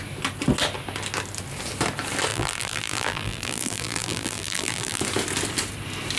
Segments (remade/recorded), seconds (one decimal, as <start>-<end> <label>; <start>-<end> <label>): 0.0-2.3 recorded; 2.3-5.0 remade; 5.0-6.2 recorded